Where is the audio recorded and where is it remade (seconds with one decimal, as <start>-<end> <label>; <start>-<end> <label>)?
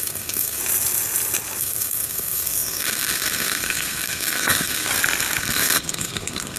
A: 0.0-0.6 remade; 0.6-1.6 recorded; 1.6-4.9 remade; 4.9-5.4 recorded; 5.4-6.6 remade